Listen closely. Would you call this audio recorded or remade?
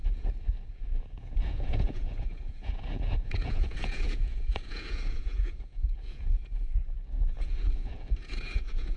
remade